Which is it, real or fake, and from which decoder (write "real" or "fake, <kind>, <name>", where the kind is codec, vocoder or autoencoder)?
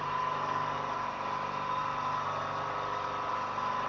real